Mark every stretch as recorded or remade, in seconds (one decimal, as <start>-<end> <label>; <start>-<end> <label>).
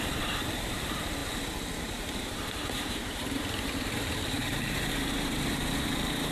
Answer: 0.0-1.2 remade; 1.2-1.8 recorded; 1.8-6.3 remade